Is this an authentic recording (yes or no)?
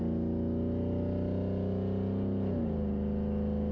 yes